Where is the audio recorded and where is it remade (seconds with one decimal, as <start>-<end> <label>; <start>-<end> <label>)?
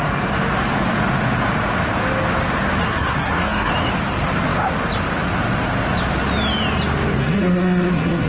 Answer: 0.0-2.8 recorded; 2.8-3.7 remade; 3.7-7.2 recorded; 7.2-8.3 remade